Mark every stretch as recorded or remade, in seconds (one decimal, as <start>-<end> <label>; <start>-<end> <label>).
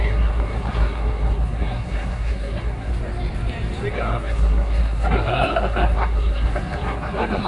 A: 0.0-2.9 remade; 2.9-3.9 recorded; 3.9-7.5 remade